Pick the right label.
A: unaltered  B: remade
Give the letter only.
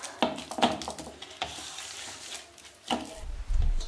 A